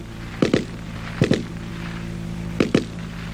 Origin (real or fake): real